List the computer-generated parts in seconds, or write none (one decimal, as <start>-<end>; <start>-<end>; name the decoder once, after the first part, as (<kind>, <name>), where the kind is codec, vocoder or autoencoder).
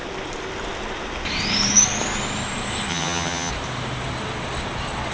2.9-3.5 (vocoder, HiFi-GAN)